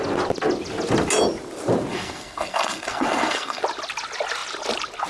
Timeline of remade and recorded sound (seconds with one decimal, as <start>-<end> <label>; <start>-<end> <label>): 0.0-1.9 recorded; 1.9-3.6 remade; 3.6-5.1 recorded